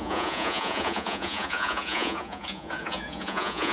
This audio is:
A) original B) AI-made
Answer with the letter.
B